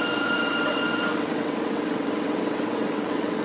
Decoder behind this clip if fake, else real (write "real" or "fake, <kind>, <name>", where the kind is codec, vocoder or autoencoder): fake, vocoder, WaveNeXt